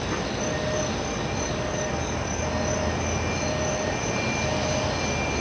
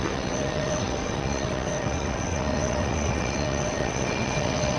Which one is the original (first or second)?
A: first